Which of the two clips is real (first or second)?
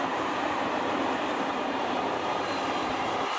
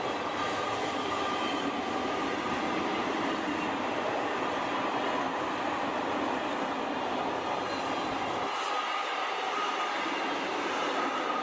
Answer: second